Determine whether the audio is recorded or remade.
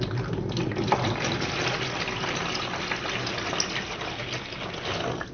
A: recorded